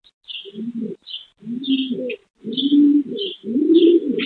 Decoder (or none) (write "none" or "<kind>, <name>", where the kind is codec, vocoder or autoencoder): none